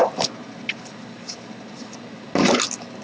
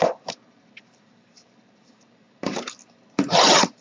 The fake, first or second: second